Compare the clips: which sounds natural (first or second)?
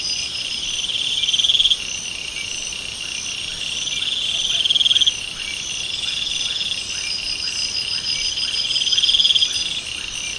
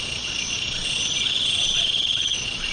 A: first